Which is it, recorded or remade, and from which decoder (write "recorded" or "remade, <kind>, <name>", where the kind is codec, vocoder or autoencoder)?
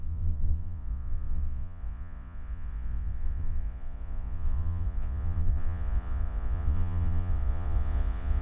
remade, vocoder, Vocos